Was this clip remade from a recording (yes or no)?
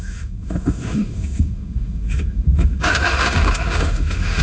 yes